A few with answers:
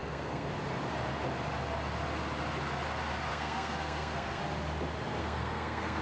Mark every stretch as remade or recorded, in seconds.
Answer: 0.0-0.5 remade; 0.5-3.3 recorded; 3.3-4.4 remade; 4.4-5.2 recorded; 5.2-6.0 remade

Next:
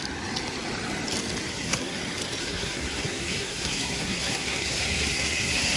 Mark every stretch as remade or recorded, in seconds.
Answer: 0.0-1.5 recorded; 1.5-2.0 remade; 2.0-2.4 recorded; 2.4-5.8 remade

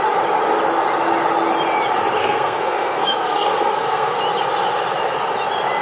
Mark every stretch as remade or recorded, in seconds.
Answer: 0.0-2.2 recorded; 2.2-4.2 remade; 4.2-5.8 recorded

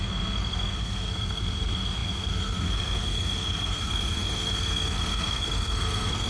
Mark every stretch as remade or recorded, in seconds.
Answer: 0.0-6.3 remade

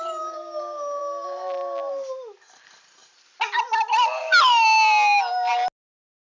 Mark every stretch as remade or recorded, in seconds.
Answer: 0.0-6.3 recorded